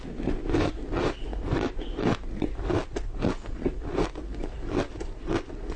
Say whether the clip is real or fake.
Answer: real